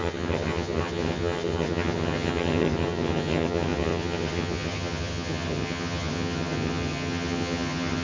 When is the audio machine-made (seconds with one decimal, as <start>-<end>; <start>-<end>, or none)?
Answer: 0.0-8.0